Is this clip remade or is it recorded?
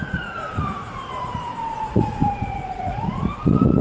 remade